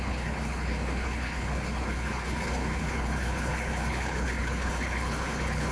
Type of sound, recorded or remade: remade